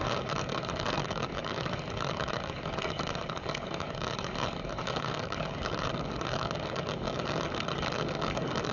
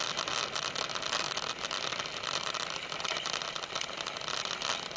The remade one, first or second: first